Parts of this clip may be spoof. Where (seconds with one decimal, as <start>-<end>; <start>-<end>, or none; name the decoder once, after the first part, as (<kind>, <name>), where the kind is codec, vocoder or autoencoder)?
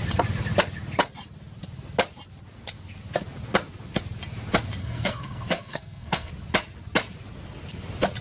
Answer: 4.8-6.3 (codec, SNAC)